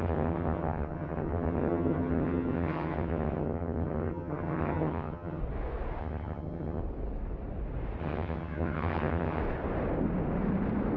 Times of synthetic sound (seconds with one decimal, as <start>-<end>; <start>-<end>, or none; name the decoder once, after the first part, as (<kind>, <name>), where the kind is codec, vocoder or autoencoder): 0.0-5.4 (vocoder, HiFi-GAN); 6.0-6.8; 8.0-9.4